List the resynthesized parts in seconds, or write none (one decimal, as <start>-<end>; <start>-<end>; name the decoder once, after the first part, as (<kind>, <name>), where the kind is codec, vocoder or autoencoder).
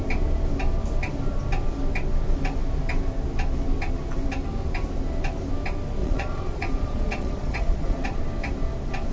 6.0-8.2 (vocoder, Vocos)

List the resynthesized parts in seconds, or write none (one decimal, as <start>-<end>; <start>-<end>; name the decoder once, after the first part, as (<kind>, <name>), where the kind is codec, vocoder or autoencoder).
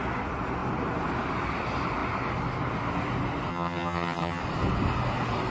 3.5-4.4 (vocoder, HiFi-GAN)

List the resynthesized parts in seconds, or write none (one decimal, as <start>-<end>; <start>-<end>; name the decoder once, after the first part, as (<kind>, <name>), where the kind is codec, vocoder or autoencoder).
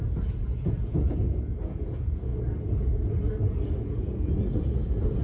0.0-2.3 (vocoder, Vocos); 3.8-5.2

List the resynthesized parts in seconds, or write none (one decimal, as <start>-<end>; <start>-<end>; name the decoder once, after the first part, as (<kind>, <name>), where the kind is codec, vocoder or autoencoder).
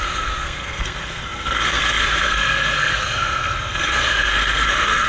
0.0-5.1 (codec, SNAC)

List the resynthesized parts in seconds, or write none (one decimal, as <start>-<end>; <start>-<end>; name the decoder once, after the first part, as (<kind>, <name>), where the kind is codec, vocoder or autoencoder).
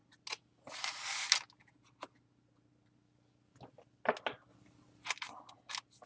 none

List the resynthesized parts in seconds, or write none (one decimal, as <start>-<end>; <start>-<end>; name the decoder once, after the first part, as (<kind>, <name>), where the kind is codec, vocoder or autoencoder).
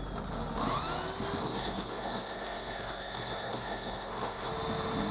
1.4-4.5 (codec, SNAC)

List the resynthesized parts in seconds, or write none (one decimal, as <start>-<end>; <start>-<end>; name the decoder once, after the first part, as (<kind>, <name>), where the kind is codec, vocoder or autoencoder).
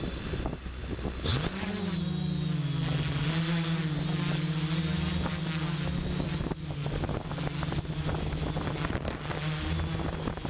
none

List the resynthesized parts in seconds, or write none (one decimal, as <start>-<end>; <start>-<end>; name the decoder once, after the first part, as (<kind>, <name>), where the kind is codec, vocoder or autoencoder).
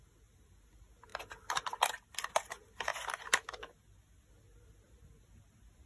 none